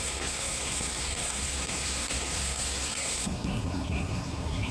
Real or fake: fake